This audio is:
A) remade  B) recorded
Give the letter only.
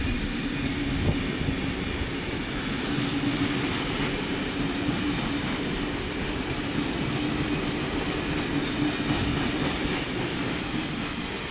B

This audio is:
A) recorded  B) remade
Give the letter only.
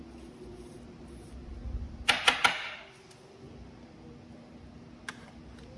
A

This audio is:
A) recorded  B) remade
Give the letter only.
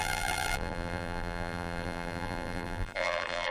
B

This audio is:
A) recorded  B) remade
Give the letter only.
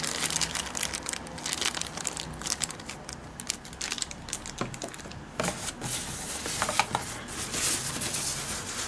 A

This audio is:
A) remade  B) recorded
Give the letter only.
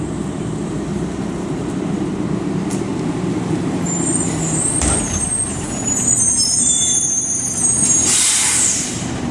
A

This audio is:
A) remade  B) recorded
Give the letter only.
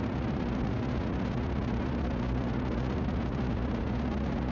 A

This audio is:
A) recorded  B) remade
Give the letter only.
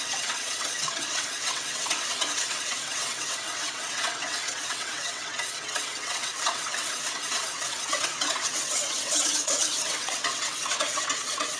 B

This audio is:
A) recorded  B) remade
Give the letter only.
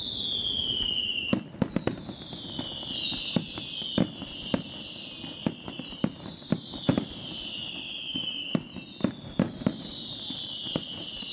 A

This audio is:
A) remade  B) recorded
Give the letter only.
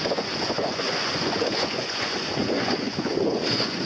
A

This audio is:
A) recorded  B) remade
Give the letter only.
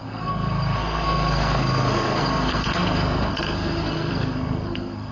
B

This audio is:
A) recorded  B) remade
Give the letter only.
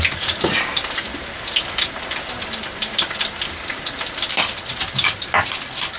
A